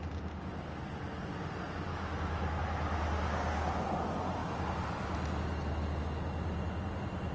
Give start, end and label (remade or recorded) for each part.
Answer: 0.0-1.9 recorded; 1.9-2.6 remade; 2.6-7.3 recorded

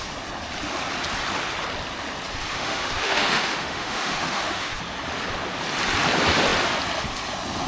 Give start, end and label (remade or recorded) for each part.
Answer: 0.0-2.5 recorded; 2.5-4.8 remade; 4.8-7.7 recorded

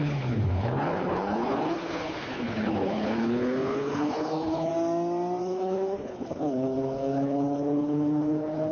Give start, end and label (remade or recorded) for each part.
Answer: 0.0-4.7 remade; 4.7-5.4 recorded; 5.4-8.7 remade

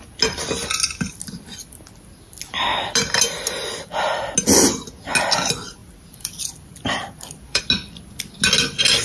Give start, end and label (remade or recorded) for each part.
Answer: 0.0-5.8 recorded; 5.8-7.6 remade; 7.6-9.0 recorded

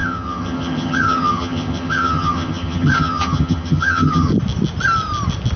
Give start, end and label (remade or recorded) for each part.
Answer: 0.0-4.3 remade; 4.3-5.6 recorded

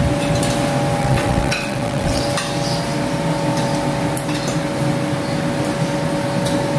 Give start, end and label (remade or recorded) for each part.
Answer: 0.0-1.0 recorded; 1.0-2.2 remade; 2.2-6.8 recorded

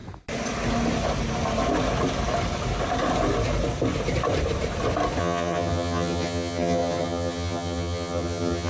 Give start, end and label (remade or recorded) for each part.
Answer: 0.0-5.2 recorded; 5.2-8.7 remade